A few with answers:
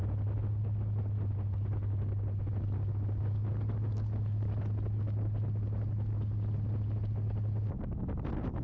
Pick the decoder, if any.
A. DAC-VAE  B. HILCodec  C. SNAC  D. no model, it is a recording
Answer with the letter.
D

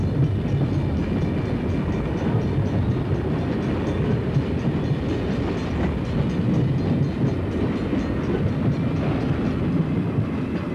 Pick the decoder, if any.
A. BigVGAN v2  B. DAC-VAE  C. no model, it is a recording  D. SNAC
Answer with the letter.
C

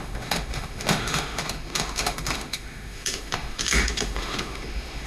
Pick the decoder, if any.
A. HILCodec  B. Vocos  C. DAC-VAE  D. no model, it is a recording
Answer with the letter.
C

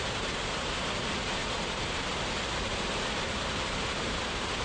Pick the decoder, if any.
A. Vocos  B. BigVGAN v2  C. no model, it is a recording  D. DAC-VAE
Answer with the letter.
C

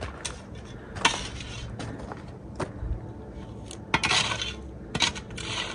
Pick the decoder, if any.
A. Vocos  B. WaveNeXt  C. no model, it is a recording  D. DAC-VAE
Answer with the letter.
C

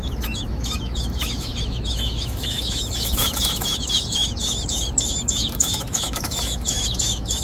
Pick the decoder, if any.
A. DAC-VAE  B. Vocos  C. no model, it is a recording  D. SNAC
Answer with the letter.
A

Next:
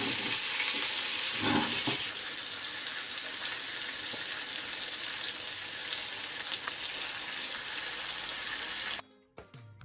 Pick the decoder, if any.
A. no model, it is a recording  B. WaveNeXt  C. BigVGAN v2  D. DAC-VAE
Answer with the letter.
A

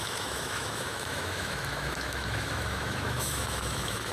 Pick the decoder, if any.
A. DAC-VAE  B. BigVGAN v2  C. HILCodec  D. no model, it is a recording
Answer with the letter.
A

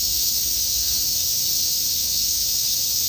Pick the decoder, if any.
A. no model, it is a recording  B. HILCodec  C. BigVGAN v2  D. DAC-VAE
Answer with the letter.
D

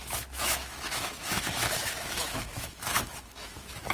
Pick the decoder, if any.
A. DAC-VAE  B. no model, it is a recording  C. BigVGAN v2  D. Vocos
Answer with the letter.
A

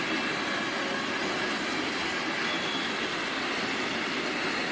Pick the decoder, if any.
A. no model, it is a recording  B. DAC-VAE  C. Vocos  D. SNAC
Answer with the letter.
A